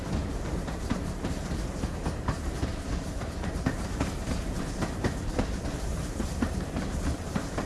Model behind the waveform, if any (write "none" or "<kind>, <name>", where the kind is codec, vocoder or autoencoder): vocoder, BigVGAN v2